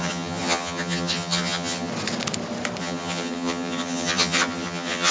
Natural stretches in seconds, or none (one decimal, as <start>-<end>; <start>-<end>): 1.9-2.8